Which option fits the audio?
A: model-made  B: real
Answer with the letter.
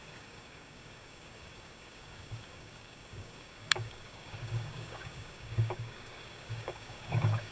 A